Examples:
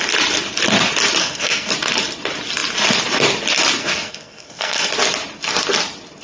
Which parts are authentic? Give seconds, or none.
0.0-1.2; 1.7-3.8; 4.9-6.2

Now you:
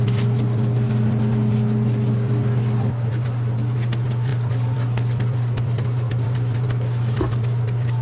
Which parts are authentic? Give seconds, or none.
0.0-8.0

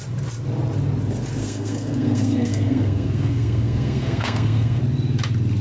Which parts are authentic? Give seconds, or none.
0.0-1.4; 4.8-5.6

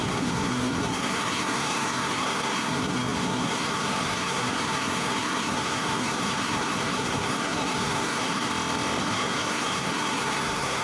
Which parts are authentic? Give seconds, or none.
8.5-9.0

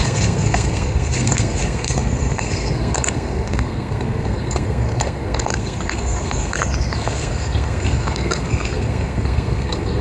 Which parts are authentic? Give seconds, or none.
none

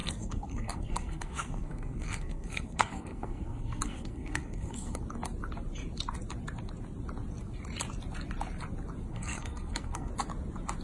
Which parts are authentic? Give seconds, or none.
5.0-9.1; 10.1-10.8